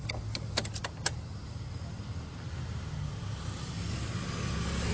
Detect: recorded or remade recorded